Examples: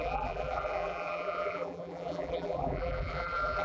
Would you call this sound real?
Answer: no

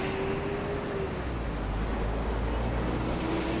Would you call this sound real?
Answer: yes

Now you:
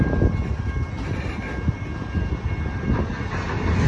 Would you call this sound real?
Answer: yes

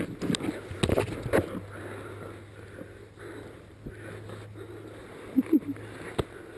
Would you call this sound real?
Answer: yes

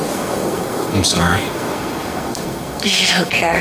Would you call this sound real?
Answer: no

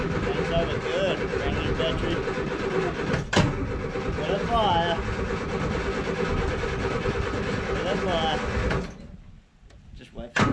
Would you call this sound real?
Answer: yes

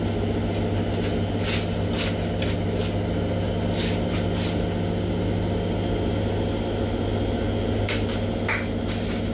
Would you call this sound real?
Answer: yes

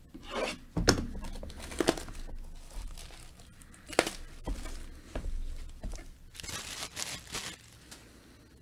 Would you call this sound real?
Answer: yes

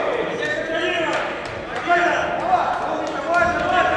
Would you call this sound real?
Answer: yes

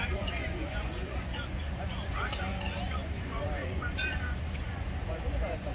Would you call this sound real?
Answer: no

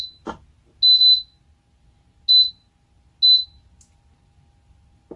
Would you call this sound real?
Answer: yes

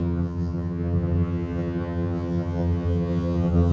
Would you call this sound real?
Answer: no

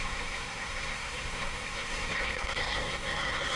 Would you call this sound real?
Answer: no